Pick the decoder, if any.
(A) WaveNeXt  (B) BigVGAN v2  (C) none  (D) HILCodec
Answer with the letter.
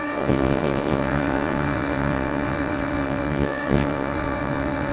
A